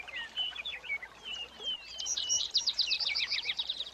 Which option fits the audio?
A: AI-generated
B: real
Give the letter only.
A